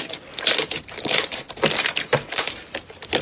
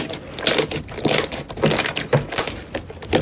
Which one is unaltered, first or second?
second